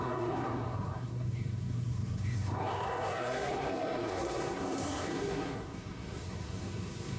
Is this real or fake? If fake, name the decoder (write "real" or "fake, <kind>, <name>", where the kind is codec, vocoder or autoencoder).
fake, codec, SNAC